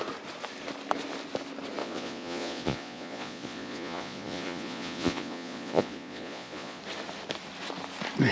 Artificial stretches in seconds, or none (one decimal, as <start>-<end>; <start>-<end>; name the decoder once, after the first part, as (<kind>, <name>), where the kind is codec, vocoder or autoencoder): 1.8-6.8 (vocoder, Vocos)